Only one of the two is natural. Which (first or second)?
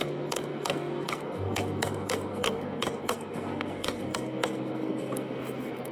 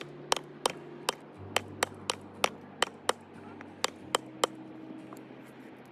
second